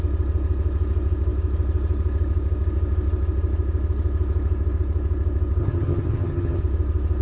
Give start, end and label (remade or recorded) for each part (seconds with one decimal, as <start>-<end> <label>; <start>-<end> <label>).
0.0-5.6 recorded; 5.6-6.6 remade; 6.6-7.2 recorded